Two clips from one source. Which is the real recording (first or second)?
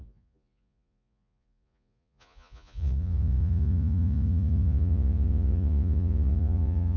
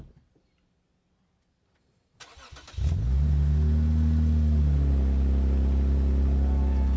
second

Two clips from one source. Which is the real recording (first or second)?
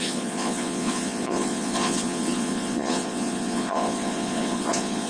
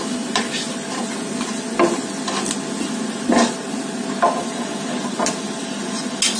second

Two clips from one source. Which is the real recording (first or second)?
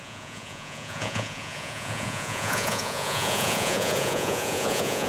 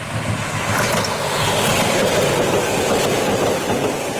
second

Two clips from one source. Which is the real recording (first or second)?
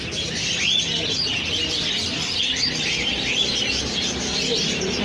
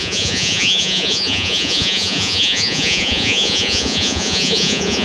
first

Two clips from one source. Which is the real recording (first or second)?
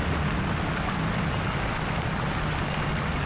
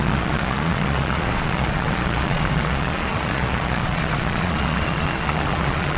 first